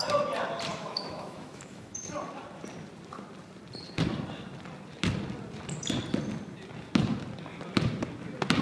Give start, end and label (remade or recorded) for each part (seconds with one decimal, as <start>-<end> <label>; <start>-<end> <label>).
0.0-0.7 recorded; 0.7-2.1 remade; 2.1-8.6 recorded